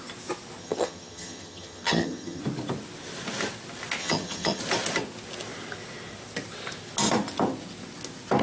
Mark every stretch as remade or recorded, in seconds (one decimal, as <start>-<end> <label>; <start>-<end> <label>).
0.0-0.6 recorded; 0.6-2.4 remade; 2.4-4.0 recorded; 4.0-4.6 remade; 4.6-8.4 recorded